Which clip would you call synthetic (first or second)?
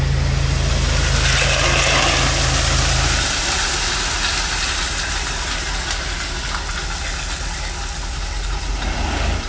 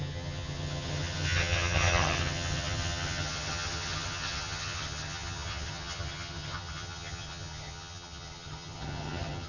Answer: second